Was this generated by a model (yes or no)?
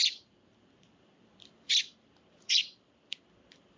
yes